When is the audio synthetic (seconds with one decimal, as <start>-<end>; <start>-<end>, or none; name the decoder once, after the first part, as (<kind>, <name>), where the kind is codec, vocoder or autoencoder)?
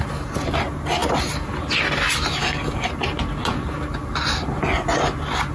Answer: 2.4-2.9 (codec, DAC)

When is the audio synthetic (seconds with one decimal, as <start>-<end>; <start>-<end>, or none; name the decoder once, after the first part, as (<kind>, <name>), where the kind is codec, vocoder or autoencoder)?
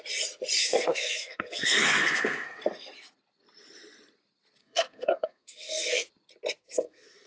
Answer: 0.6-2.6 (codec, SNAC); 4.6-6.1; 6.6-7.3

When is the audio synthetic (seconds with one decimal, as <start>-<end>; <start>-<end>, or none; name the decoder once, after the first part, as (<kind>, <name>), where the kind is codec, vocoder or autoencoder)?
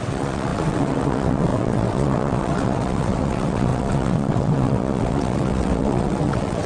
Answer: 0.0-6.7 (vocoder, WaveNeXt)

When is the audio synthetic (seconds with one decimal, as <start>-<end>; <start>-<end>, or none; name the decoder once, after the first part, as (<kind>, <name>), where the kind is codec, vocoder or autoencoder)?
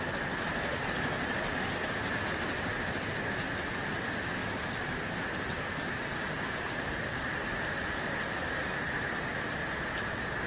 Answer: none